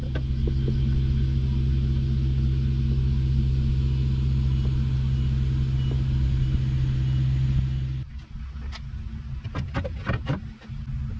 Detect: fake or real real